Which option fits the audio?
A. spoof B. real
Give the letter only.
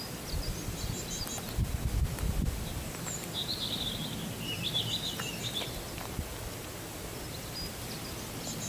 B